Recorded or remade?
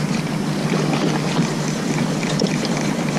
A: recorded